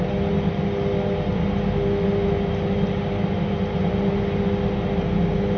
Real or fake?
real